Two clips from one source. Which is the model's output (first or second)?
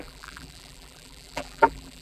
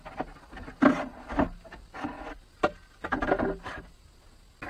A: first